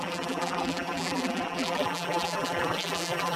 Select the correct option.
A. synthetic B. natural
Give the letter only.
A